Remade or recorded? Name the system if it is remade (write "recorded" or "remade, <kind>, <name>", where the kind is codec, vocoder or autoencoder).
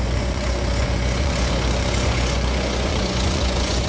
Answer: remade, vocoder, Vocos